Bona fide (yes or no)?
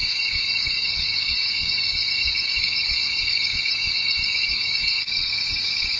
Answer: no